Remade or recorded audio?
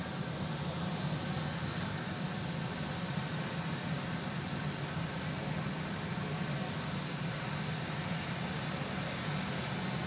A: recorded